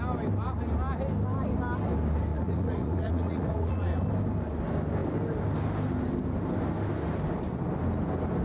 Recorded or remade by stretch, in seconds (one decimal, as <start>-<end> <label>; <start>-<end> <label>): 0.0-2.3 recorded; 2.3-4.1 remade; 4.1-8.4 recorded